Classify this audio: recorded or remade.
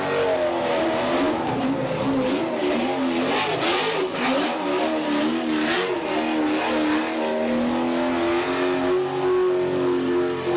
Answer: recorded